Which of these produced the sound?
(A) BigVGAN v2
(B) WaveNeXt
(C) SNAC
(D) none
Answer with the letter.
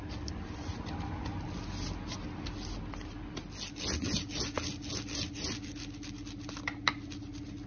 D